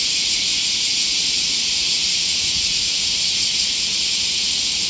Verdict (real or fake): fake